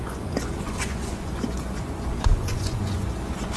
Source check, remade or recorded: remade